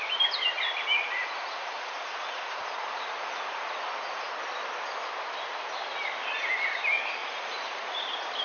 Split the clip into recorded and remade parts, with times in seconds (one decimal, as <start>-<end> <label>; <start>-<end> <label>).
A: 0.0-1.2 recorded; 1.2-4.3 remade; 4.3-7.2 recorded; 7.2-8.0 remade; 8.0-8.4 recorded